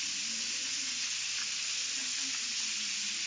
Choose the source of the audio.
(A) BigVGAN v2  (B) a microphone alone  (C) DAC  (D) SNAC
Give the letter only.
B